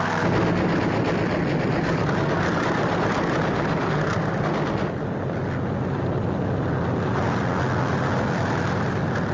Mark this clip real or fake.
real